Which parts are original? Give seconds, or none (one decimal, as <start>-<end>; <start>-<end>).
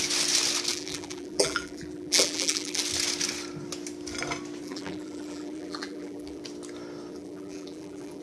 0.0-0.7; 2.8-4.6; 6.4-7.1